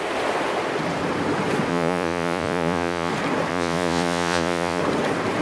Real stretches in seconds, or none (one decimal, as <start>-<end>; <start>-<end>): 0.0-1.7; 3.1-3.5; 4.8-5.4